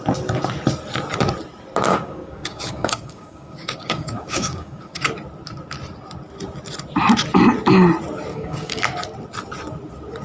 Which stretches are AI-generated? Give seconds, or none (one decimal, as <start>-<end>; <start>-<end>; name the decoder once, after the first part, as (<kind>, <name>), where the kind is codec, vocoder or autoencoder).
1.9-5.1 (codec, DAC); 8.3-8.8